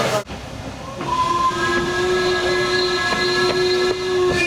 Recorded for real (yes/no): yes